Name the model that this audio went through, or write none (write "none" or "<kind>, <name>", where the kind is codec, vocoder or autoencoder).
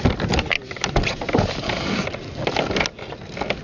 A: none